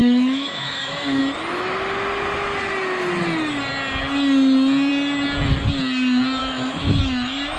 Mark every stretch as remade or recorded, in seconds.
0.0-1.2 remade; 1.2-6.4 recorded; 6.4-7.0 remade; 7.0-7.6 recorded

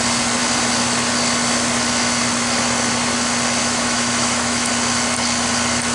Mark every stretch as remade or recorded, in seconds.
0.0-3.6 recorded; 3.6-4.7 remade; 4.7-5.9 recorded

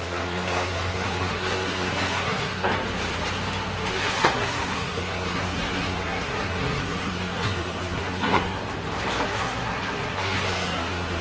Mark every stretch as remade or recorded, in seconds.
0.0-2.7 remade; 2.7-3.9 recorded; 3.9-8.6 remade; 8.6-9.2 recorded; 9.2-11.2 remade